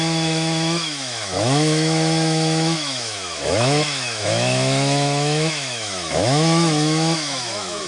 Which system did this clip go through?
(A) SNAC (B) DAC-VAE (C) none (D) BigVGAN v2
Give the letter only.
B